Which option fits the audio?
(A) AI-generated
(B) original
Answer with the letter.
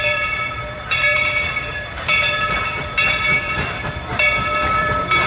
A